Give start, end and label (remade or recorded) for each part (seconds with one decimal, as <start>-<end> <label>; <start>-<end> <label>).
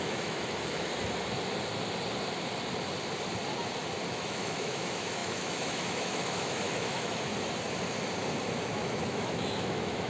0.0-0.9 remade; 0.9-4.1 recorded; 4.1-7.3 remade; 7.3-8.6 recorded; 8.6-10.1 remade